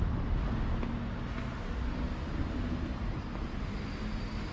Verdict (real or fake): real